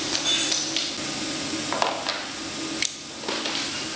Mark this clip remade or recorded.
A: recorded